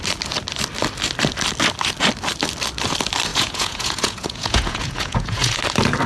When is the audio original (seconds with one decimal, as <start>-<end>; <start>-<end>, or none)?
0.0-3.3; 5.6-6.1